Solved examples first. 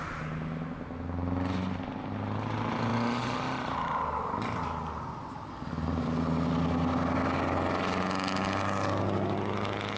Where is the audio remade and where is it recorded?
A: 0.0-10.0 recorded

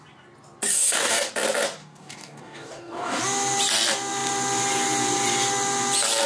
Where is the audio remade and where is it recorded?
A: 0.0-0.7 recorded; 0.7-1.3 remade; 1.3-1.8 recorded; 1.8-3.2 remade; 3.2-6.3 recorded

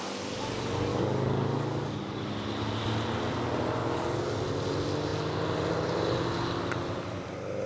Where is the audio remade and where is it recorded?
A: 0.0-0.9 recorded; 0.9-2.3 remade; 2.3-3.8 recorded; 3.8-4.4 remade; 4.4-7.7 recorded

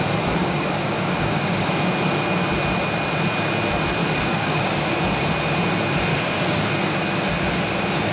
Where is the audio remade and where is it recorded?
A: 0.0-0.4 recorded; 0.4-1.7 remade; 1.7-4.0 recorded; 4.0-4.9 remade; 4.9-6.1 recorded; 6.1-6.7 remade; 6.7-8.1 recorded

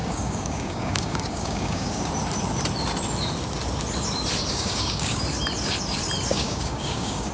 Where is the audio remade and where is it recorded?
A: 0.0-2.1 remade; 2.1-4.5 recorded; 4.5-5.2 remade; 5.2-6.3 recorded; 6.3-7.3 remade